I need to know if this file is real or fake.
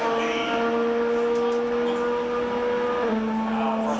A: real